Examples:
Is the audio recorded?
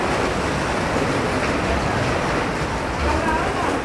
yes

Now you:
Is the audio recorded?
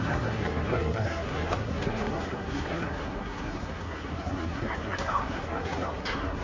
no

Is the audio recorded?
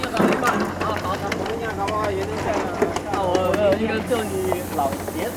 yes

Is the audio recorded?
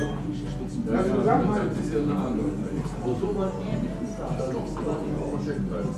yes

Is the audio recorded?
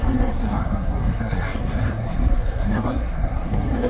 no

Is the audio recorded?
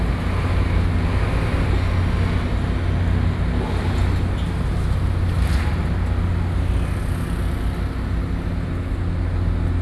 yes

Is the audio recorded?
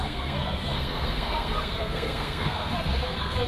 no